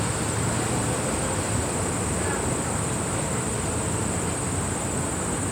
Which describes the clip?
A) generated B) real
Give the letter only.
B